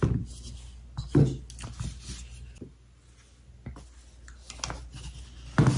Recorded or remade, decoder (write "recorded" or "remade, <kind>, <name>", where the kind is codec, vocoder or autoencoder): recorded